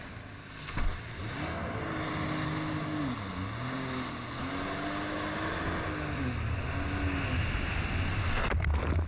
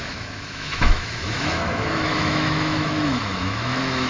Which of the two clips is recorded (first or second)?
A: first